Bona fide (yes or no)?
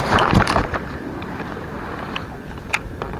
no